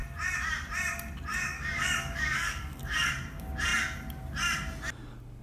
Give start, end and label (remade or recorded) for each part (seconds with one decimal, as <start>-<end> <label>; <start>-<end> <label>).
0.0-1.3 recorded; 1.3-3.1 remade; 3.1-5.4 recorded